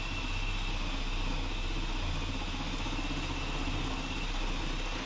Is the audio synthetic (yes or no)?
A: no